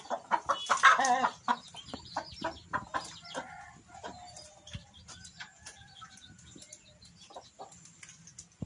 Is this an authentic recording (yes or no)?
yes